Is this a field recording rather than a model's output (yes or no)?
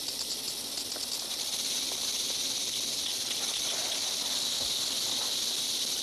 yes